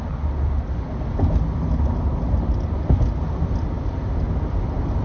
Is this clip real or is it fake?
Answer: real